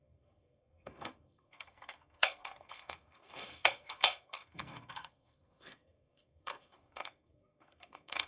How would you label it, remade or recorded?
remade